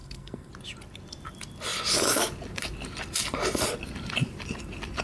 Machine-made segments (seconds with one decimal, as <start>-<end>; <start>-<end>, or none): 0.0-0.5